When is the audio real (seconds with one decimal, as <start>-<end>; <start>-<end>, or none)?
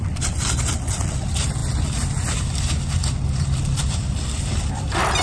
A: 0.0-5.2